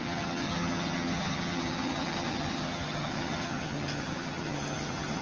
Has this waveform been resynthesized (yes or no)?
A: yes